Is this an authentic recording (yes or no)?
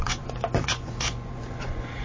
no